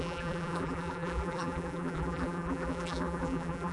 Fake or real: fake